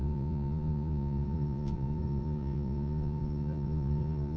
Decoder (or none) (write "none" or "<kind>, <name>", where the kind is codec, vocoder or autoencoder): vocoder, Vocos